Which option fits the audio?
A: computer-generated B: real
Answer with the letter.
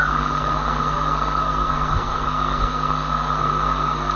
A